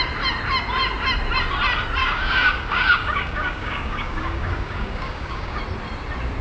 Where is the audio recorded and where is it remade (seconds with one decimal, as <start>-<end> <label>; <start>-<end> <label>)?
0.0-2.0 recorded; 2.0-5.6 remade; 5.6-6.4 recorded